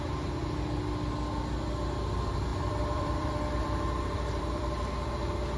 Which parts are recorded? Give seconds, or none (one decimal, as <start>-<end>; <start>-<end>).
0.0-2.5; 5.1-5.6